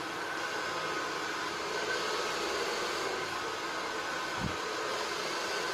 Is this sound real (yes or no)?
yes